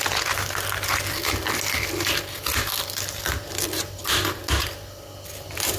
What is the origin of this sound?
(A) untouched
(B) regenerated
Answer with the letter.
A